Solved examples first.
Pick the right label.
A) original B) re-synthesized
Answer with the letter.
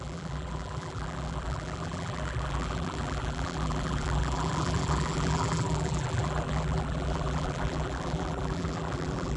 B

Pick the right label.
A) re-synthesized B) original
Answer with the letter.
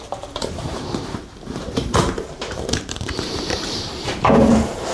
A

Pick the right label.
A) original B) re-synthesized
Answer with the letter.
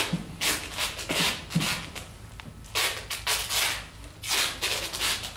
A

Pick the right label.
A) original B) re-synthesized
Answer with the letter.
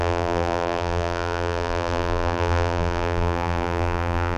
B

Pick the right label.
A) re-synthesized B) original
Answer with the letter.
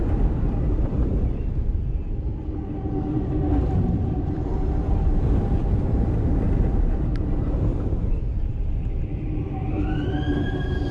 A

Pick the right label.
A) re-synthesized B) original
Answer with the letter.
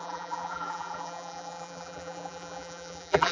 A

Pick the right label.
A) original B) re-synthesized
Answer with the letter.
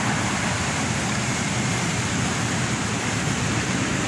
B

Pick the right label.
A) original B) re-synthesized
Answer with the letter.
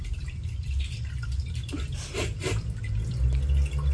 B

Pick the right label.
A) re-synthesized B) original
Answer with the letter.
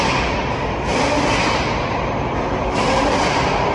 B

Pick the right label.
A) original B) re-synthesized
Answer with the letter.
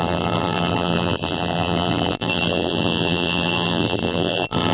B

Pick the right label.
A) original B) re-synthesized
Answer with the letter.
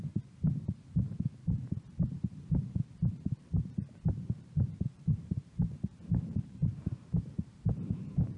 B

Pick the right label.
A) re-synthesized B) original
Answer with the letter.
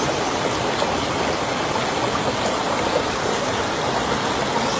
B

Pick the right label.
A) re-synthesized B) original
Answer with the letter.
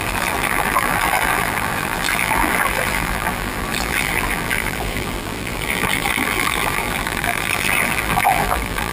A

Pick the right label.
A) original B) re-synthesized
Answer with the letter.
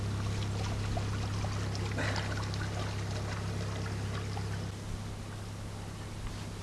A